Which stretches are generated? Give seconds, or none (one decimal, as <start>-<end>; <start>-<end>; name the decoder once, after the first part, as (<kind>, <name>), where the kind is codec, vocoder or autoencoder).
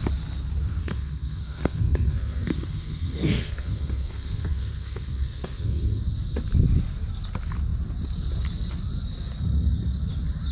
0.8-6.1 (codec, SNAC)